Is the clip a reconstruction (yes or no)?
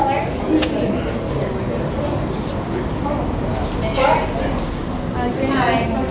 no